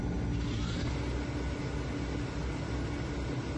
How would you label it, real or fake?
real